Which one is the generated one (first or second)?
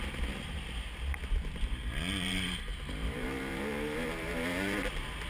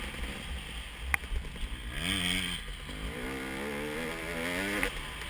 first